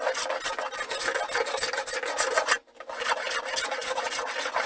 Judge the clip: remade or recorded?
recorded